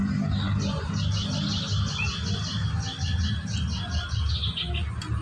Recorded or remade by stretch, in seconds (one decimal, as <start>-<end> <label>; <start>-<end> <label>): 0.0-5.2 recorded

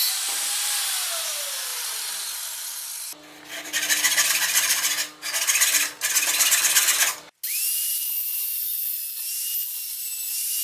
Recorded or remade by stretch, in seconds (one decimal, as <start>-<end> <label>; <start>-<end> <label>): 0.0-10.6 recorded

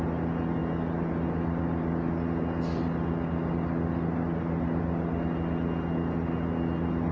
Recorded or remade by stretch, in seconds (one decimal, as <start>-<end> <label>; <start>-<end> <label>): 0.0-7.1 recorded

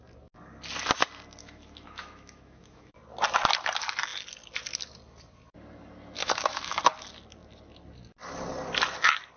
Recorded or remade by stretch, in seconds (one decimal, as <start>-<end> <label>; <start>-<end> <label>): 0.0-1.4 recorded; 1.4-2.9 remade; 2.9-6.2 recorded; 6.2-6.8 remade; 6.8-9.4 recorded

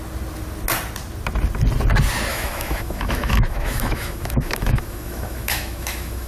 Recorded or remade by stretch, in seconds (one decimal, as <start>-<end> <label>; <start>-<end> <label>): 0.0-2.3 recorded; 2.3-6.3 remade

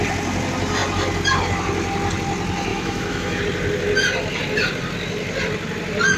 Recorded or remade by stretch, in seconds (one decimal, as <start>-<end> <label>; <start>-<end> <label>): 0.0-2.7 recorded; 2.7-3.4 remade; 3.4-6.2 recorded

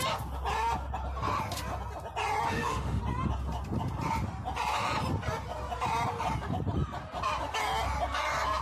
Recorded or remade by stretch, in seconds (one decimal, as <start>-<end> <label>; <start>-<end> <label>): 0.0-2.5 recorded; 2.5-3.0 remade; 3.0-8.6 recorded

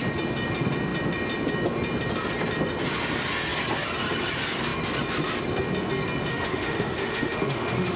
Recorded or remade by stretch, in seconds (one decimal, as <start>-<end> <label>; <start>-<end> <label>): 0.0-6.3 recorded; 6.3-8.0 remade